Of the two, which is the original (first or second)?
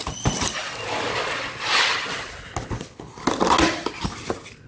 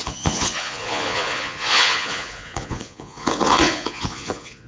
first